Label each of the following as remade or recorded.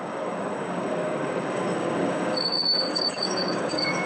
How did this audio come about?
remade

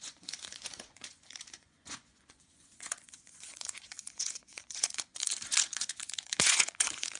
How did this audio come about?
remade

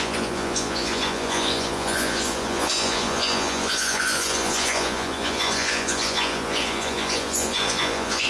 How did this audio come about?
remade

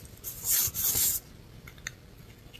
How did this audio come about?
recorded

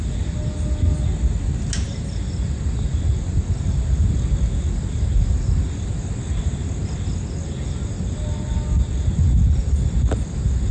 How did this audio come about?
recorded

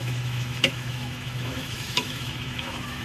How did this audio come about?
remade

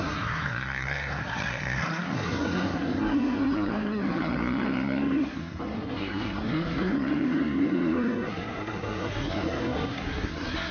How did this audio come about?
remade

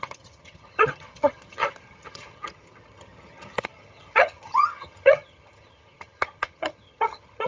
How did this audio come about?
remade